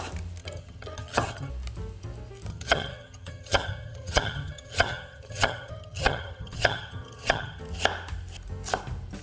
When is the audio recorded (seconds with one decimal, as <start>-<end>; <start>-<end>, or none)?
0.0-0.4; 1.5-2.5; 7.6-9.2